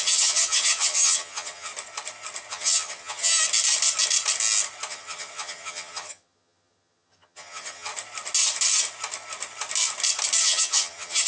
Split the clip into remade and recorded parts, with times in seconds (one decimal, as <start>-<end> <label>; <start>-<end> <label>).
0.0-1.7 remade; 1.7-2.5 recorded; 2.5-3.3 remade; 3.3-4.9 recorded; 4.9-7.9 remade; 7.9-10.4 recorded; 10.4-11.3 remade